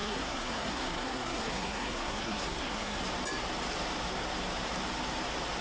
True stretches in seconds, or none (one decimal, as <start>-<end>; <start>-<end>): 3.0-5.6